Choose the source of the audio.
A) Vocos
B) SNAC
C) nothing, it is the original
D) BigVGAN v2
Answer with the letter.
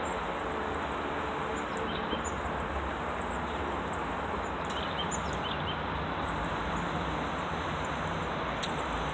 C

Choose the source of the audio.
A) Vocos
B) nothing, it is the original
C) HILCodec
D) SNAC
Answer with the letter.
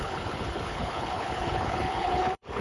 C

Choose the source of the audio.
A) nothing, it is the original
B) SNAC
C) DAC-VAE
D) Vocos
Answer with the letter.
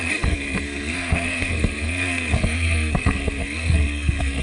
B